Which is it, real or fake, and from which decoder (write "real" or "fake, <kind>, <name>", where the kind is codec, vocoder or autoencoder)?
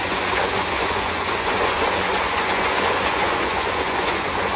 fake, vocoder, Vocos